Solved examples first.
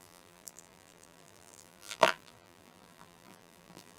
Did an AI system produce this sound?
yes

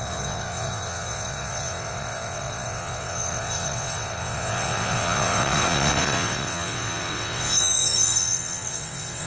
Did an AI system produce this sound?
yes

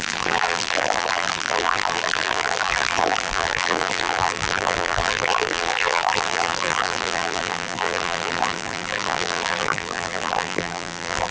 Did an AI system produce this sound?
yes